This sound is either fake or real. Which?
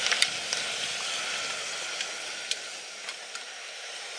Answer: real